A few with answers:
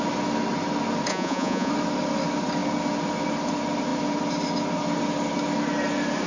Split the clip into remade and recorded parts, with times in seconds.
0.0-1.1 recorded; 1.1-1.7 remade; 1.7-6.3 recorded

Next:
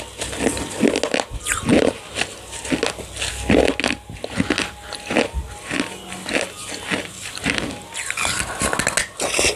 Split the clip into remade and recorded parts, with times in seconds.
0.0-9.6 recorded

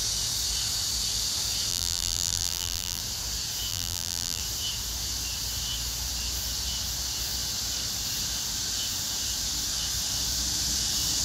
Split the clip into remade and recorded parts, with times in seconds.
0.0-1.7 recorded; 1.7-3.0 remade; 3.0-3.7 recorded; 3.7-4.4 remade; 4.4-11.2 recorded

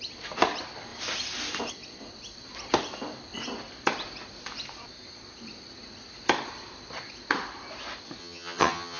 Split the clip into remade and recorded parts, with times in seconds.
0.0-8.2 recorded; 8.2-9.0 remade